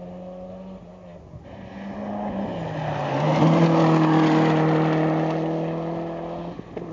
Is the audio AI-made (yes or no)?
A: no